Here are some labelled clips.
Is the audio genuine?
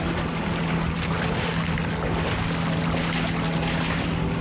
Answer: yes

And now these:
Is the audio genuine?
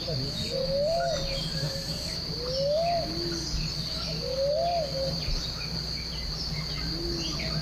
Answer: yes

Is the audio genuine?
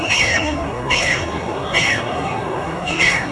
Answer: no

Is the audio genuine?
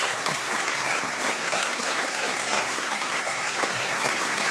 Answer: no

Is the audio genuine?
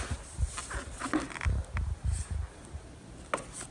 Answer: yes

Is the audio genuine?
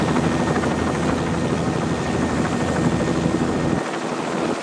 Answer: yes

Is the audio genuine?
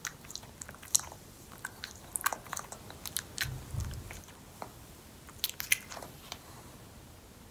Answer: yes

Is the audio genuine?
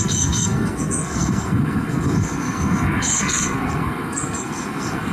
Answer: no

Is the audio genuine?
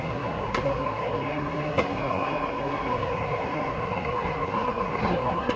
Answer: no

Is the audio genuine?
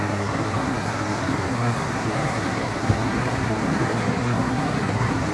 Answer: no